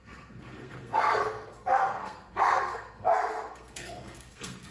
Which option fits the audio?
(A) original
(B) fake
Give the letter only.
B